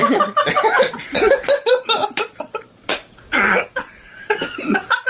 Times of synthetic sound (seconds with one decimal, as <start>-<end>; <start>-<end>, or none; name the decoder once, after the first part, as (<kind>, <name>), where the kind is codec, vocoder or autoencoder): 1.1-1.7 (codec, DAC); 2.9-4.6